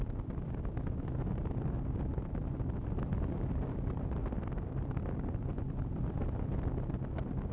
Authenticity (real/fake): real